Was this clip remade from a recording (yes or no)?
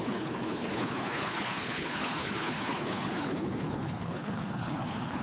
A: yes